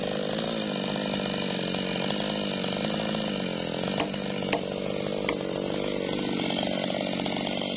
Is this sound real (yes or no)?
yes